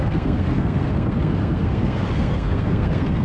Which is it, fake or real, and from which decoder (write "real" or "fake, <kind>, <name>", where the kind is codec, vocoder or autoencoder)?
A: fake, codec, SNAC